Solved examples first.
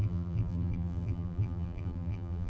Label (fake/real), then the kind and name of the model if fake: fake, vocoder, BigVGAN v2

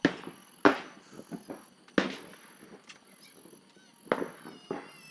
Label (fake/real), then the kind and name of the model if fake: real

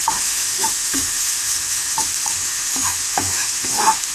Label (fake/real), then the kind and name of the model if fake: fake, autoencoder, DAC-VAE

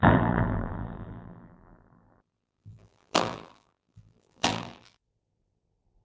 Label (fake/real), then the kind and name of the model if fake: fake, vocoder, BigVGAN v2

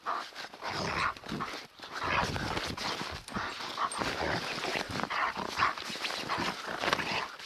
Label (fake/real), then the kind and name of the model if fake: real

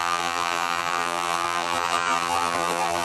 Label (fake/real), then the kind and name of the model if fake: fake, vocoder, BigVGAN v2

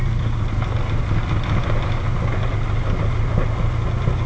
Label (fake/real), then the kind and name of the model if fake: real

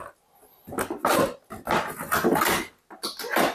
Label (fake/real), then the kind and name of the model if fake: real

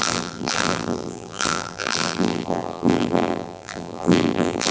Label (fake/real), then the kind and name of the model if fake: fake, vocoder, BigVGAN v2